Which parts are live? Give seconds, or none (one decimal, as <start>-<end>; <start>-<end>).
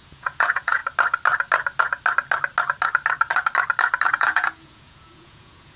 0.8-4.1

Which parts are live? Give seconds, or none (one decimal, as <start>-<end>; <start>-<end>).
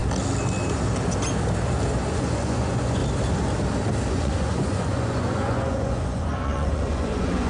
0.0-2.1; 3.0-4.1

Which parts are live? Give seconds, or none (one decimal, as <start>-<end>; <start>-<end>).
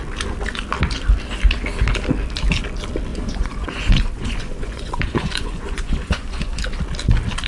0.0-3.1; 6.6-7.5